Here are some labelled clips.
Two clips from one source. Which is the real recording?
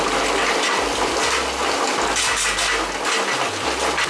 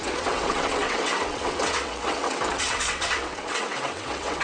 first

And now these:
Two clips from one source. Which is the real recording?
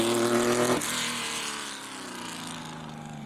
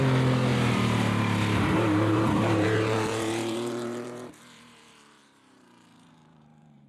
first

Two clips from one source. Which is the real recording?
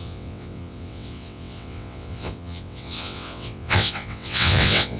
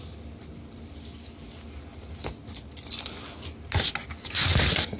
second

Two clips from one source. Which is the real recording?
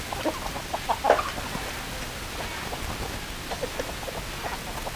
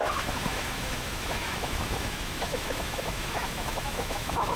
first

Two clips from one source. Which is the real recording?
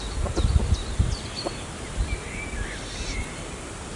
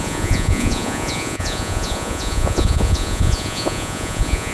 first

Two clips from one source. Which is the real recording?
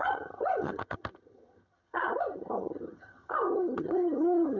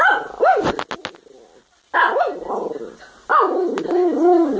second